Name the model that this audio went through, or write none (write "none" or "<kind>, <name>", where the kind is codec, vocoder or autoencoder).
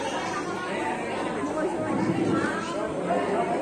none